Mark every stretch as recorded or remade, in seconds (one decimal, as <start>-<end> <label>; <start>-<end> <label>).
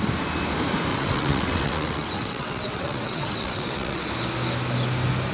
0.0-0.9 recorded; 0.9-4.1 remade; 4.1-5.3 recorded